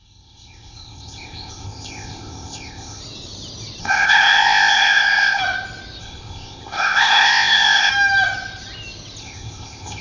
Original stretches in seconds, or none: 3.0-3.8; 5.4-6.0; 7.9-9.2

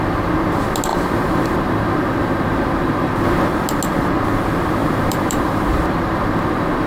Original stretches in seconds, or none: 0.0-0.9; 3.1-4.8

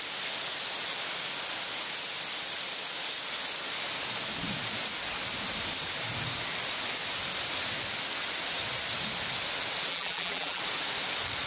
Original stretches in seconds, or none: 0.0-9.9; 10.6-11.5

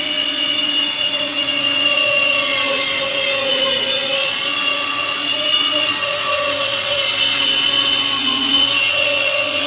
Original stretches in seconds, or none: none